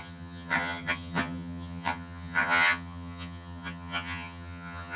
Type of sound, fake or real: fake